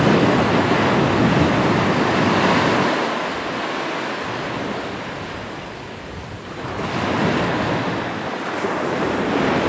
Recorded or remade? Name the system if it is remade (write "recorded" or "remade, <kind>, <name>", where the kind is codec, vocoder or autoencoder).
recorded